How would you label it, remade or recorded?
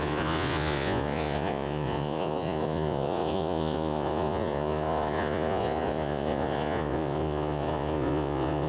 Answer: remade